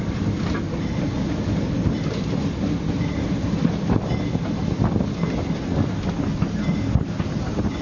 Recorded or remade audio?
recorded